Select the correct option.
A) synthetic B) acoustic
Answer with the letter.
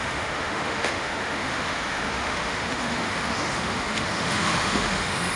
A